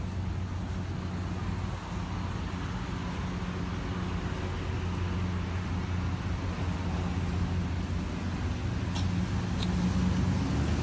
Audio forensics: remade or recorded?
recorded